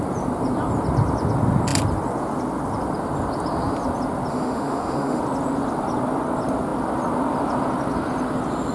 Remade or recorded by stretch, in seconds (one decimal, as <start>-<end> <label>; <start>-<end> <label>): 0.0-4.3 recorded; 4.3-5.2 remade; 5.2-8.7 recorded